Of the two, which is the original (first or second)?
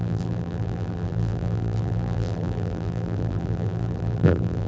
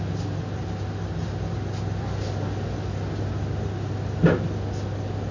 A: second